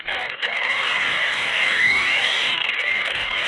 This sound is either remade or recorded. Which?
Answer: remade